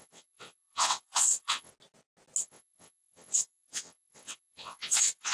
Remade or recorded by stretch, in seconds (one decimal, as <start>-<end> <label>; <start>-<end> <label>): 0.0-1.7 remade; 1.7-2.4 recorded; 2.4-5.3 remade

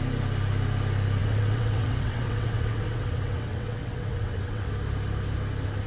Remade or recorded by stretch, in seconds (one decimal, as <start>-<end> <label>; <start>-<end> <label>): 0.0-1.2 recorded; 1.2-4.7 remade; 4.7-5.9 recorded

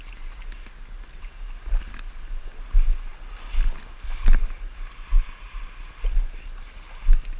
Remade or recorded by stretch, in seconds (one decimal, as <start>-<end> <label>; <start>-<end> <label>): 0.0-7.4 recorded

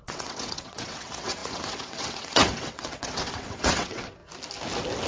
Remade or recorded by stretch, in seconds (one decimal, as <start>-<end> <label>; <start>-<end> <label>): 0.0-4.2 remade; 4.2-5.1 recorded

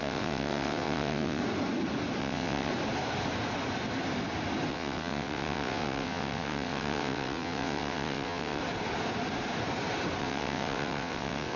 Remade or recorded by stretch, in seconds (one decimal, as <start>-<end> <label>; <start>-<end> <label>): 0.0-1.4 remade; 1.4-2.2 recorded; 2.2-2.7 remade; 2.7-4.7 recorded; 4.7-8.6 remade; 8.6-10.2 recorded; 10.2-11.6 remade

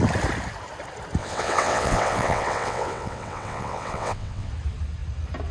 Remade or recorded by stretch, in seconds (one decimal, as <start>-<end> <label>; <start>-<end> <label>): 0.0-1.2 recorded; 1.2-4.5 remade; 4.5-5.5 recorded